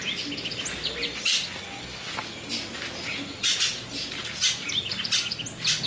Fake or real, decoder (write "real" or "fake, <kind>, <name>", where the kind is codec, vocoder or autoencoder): real